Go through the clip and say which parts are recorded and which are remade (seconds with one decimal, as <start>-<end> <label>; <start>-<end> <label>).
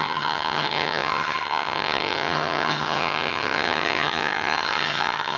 0.0-5.4 remade